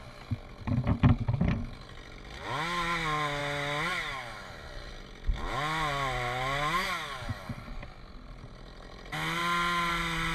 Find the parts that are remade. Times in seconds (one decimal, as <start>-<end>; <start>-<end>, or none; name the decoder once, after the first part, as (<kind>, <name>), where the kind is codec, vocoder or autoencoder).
none